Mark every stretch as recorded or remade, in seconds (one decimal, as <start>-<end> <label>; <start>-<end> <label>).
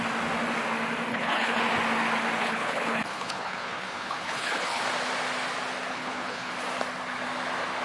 0.0-1.1 recorded; 1.1-1.6 remade; 1.6-2.4 recorded; 2.4-4.8 remade; 4.8-5.9 recorded; 5.9-6.5 remade; 6.5-7.8 recorded